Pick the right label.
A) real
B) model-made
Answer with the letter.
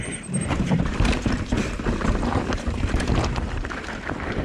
B